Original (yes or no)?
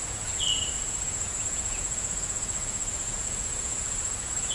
no